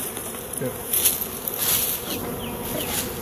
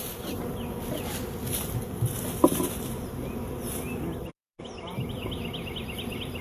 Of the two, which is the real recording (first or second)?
first